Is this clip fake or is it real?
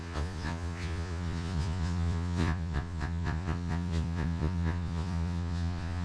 fake